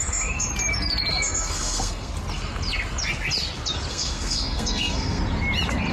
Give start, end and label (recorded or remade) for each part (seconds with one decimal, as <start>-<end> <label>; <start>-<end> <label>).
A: 0.0-0.5 remade; 0.5-1.1 recorded; 1.1-2.1 remade; 2.1-3.9 recorded; 3.9-5.2 remade; 5.2-5.9 recorded